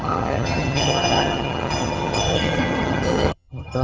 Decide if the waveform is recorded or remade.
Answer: remade